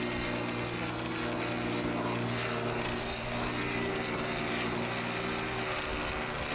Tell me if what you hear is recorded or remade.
recorded